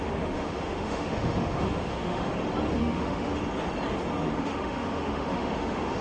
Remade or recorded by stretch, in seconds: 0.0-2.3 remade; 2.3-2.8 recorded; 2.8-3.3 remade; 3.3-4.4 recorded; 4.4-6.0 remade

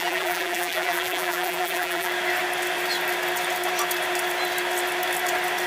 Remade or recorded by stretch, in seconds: 0.0-2.1 remade; 2.1-5.7 recorded

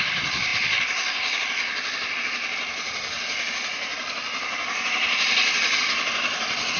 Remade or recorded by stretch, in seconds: 0.0-6.8 recorded

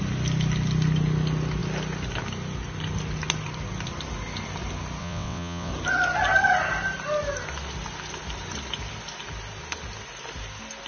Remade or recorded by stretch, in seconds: 0.0-5.0 recorded; 5.0-5.7 remade; 5.7-10.9 recorded

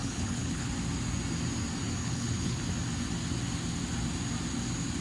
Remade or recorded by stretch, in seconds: 0.0-0.7 remade; 0.7-2.0 recorded; 2.0-2.6 remade; 2.6-5.0 recorded